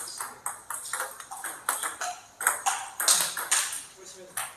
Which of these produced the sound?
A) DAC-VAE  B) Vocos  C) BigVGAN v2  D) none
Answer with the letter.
D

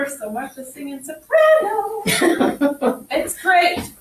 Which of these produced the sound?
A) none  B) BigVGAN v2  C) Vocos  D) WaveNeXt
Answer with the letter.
A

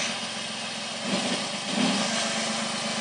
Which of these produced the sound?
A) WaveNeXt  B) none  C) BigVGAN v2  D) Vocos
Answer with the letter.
B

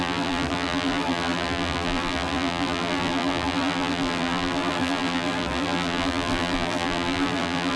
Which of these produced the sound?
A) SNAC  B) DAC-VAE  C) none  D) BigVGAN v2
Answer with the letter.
D